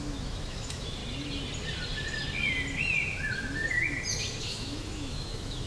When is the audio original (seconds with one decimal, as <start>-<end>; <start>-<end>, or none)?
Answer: 1.0-4.4